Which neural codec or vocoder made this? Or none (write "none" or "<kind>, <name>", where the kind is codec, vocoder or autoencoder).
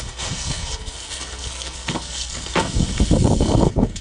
codec, SNAC